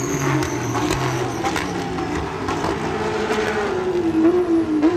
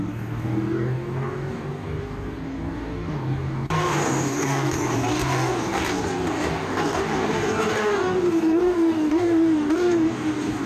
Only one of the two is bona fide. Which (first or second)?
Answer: first